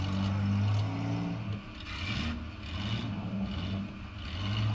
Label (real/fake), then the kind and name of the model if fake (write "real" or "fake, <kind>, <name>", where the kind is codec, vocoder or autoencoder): real